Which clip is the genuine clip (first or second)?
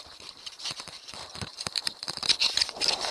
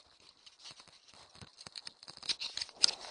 second